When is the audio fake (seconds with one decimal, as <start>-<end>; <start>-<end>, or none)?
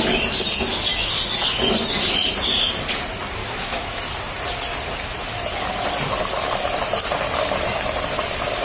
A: 3.4-4.0